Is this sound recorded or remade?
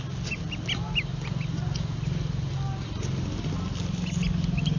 recorded